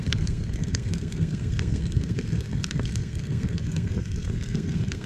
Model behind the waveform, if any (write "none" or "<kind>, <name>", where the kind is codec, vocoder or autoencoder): codec, SNAC